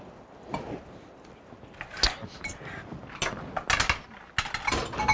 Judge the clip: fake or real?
real